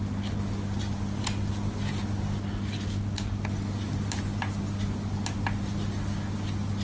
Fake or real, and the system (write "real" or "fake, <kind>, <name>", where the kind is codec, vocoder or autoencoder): real